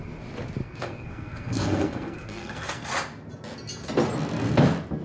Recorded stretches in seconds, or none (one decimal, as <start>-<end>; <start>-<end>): 0.0-0.6; 2.9-5.0